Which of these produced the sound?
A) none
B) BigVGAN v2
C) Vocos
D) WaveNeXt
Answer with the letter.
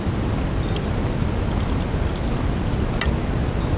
A